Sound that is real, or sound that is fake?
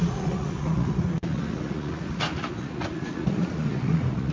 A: fake